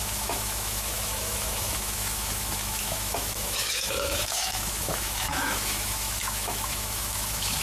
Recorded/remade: remade